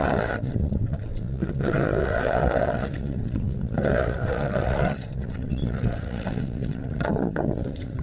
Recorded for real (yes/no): no